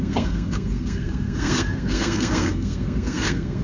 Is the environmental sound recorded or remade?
remade